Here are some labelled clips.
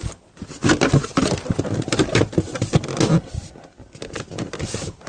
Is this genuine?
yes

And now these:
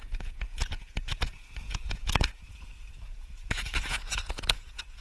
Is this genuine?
no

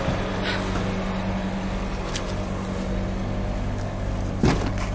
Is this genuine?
yes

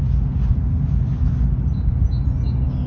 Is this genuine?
yes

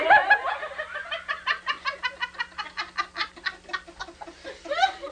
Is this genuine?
yes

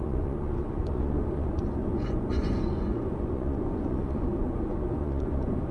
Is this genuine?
no